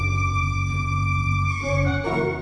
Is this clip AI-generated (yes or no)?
yes